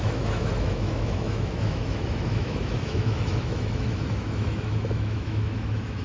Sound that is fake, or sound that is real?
fake